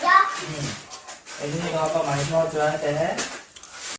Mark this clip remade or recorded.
recorded